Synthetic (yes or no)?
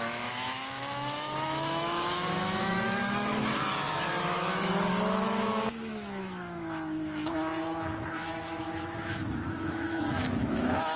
yes